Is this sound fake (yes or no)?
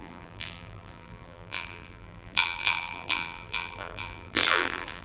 yes